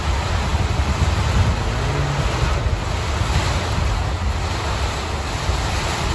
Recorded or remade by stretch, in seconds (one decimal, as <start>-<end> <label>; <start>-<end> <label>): 0.0-6.1 recorded